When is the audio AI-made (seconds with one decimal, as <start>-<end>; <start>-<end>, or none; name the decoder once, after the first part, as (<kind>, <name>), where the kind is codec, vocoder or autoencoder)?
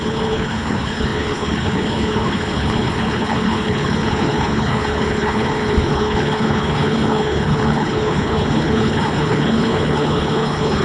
0.0-10.8 (codec, HILCodec)